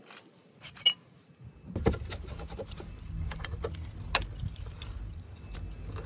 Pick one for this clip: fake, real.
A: real